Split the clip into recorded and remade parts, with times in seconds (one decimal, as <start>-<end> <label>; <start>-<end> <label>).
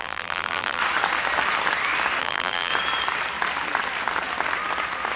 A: 0.0-0.8 remade; 0.8-2.2 recorded; 2.2-2.7 remade; 2.7-5.2 recorded